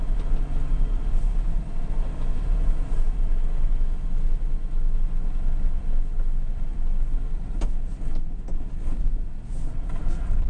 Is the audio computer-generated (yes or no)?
no